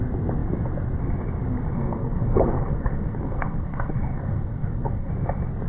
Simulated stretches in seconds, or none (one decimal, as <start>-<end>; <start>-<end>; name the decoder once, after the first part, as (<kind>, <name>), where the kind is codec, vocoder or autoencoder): 1.7-5.1 (codec, SNAC)

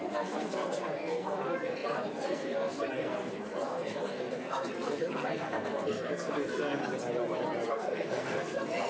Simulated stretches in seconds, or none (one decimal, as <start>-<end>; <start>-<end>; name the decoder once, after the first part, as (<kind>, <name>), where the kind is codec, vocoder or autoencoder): 0.0-6.8 (codec, SNAC); 7.7-8.9

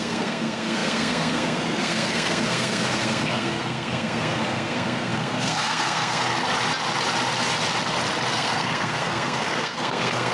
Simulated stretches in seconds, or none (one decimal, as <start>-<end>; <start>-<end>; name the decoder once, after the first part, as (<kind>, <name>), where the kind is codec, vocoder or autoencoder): 0.0-6.2 (codec, SNAC); 8.3-10.3

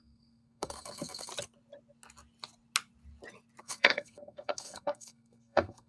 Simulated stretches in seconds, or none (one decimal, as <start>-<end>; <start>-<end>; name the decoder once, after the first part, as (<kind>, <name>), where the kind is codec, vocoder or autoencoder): 0.0-1.3 (codec, SNAC); 3.6-5.9

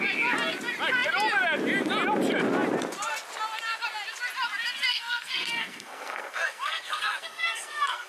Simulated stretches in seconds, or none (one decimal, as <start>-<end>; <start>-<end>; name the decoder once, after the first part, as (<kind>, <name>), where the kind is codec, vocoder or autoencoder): 4.9-8.1 (codec, SNAC)

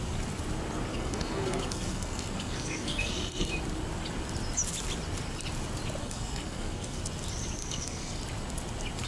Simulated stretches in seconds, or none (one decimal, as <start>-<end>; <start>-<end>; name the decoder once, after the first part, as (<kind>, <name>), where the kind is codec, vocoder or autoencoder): 0.9-3.5 (codec, SNAC); 6.0-7.0; 7.6-8.2

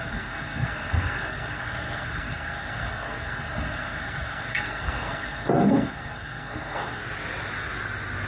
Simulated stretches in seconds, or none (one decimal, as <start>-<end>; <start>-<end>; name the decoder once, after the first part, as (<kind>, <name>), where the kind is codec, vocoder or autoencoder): 0.0-7.0 (codec, SNAC)